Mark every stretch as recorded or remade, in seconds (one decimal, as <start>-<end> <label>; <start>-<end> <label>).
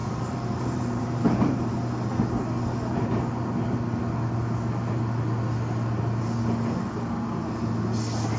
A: 0.0-1.7 remade; 1.7-8.4 recorded